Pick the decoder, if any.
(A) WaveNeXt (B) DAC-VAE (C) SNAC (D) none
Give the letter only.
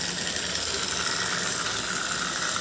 D